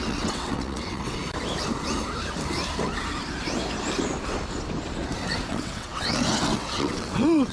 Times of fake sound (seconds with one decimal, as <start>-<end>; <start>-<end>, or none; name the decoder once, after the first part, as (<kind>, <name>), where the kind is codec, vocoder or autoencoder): 0.0-1.2 (vocoder, WaveNeXt); 5.5-7.5